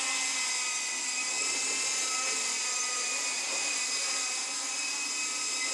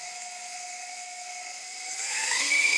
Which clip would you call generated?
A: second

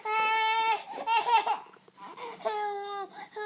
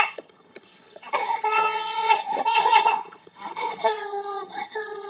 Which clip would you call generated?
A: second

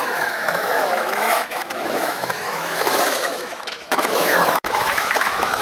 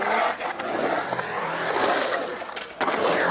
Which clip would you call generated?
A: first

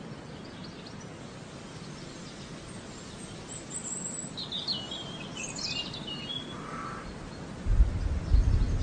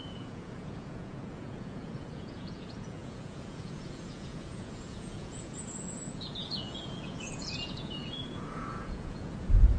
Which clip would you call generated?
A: second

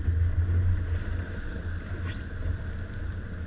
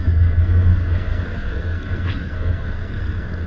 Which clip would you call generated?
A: second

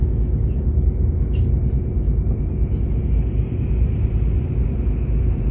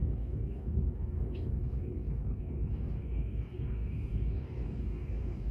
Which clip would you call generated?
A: second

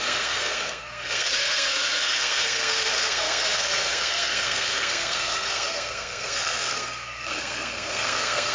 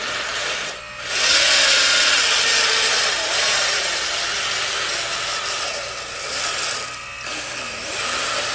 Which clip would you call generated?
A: first